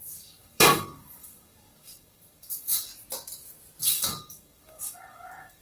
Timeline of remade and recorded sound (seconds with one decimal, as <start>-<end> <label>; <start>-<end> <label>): 0.0-2.9 remade; 2.9-3.8 recorded; 3.8-5.6 remade